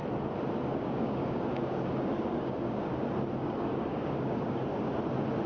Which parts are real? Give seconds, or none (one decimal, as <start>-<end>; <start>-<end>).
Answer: 0.0-0.7; 2.9-3.4; 4.7-5.5